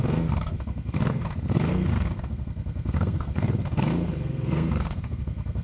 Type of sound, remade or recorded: remade